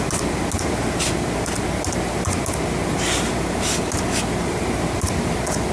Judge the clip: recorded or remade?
recorded